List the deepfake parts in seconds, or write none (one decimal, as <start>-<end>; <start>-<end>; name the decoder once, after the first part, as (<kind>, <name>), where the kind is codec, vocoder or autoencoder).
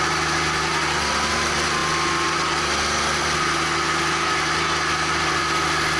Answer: none